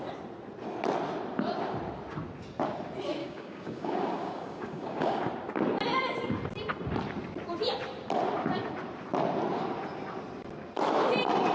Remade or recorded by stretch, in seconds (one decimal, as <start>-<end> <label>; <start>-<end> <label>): 0.0-3.2 recorded; 3.2-5.2 remade; 5.2-11.5 recorded